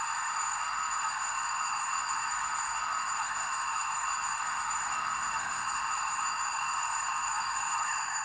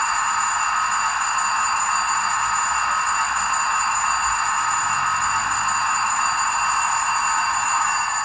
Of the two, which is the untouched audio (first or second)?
second